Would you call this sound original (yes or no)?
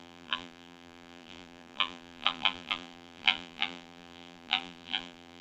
no